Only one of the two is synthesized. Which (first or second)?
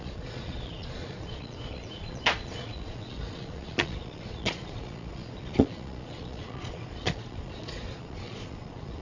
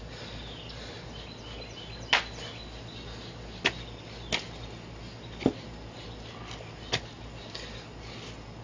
first